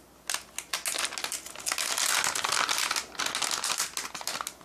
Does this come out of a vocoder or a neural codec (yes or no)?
no